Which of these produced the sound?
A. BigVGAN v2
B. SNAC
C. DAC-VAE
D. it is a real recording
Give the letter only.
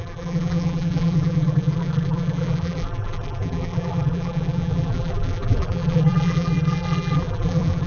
A